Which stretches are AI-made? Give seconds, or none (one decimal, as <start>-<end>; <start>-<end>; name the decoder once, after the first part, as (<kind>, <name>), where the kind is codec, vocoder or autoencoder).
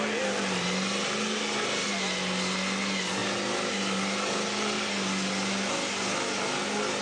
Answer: none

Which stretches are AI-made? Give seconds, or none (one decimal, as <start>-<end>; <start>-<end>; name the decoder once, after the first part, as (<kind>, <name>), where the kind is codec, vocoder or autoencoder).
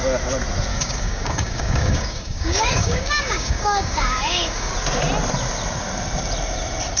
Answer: 0.7-4.7 (codec, DAC)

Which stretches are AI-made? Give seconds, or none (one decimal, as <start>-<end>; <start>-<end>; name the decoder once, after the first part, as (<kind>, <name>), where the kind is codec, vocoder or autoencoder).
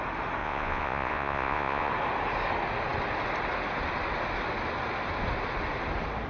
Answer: 0.4-1.9 (vocoder, Vocos)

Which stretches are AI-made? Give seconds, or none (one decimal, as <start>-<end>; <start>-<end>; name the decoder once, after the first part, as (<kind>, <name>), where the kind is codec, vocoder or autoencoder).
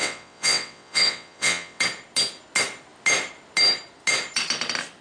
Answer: 0.0-1.8 (vocoder, WaveNeXt)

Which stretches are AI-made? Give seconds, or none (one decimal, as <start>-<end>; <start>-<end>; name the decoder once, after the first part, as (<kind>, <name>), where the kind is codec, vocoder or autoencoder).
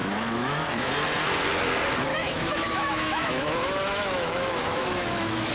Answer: 0.0-0.9 (autoencoder, DAC-VAE); 2.1-5.5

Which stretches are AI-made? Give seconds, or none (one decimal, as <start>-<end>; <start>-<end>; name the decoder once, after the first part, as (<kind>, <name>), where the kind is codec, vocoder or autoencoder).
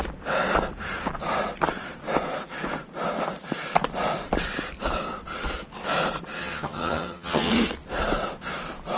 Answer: 6.4-7.5 (vocoder, HiFi-GAN)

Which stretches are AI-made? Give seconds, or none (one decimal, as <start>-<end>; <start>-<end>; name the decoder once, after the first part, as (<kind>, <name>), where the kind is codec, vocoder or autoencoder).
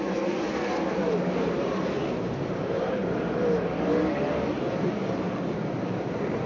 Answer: 0.0-3.0 (vocoder, BigVGAN v2); 4.5-6.5